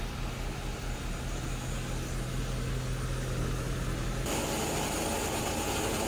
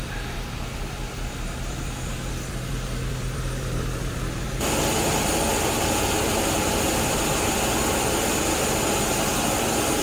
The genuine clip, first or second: first